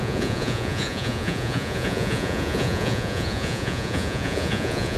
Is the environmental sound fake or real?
fake